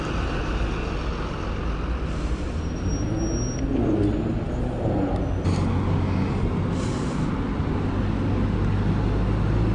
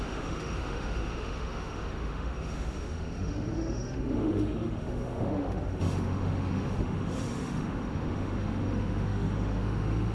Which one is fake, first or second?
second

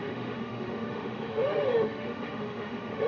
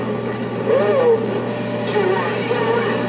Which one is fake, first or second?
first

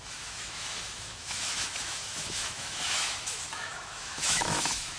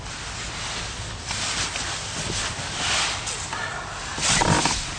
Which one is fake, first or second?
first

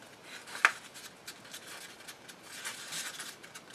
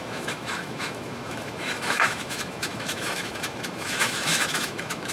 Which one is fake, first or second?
second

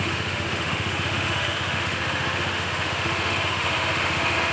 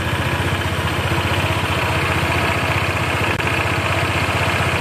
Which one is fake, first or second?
first